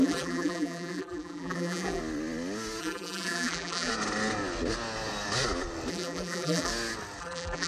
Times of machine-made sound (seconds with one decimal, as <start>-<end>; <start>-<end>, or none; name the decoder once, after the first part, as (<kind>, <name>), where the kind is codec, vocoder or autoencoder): 0.0-2.0 (vocoder, BigVGAN v2); 2.8-3.9; 5.9-6.7; 7.2-7.7